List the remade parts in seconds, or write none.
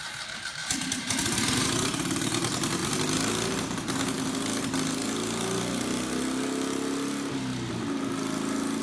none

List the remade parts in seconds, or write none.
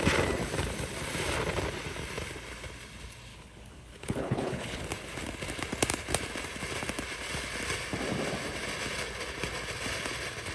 3.3-4.8 (codec, HILCodec)